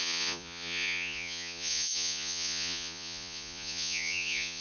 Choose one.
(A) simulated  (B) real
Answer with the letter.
A